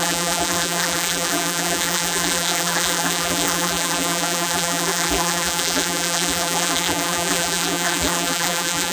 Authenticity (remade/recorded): remade